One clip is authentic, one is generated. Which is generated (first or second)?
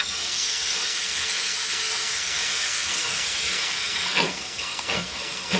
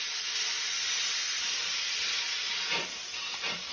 first